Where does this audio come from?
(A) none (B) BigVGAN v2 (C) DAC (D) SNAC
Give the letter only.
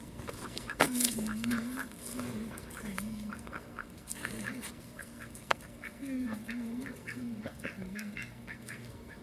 D